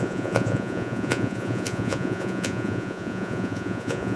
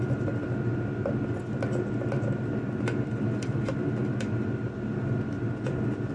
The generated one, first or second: first